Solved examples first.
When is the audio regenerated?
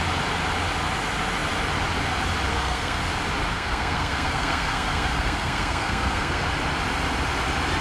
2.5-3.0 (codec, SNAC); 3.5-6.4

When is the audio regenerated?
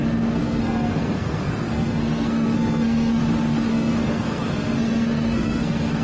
0.0-3.2 (codec, SNAC); 3.7-6.0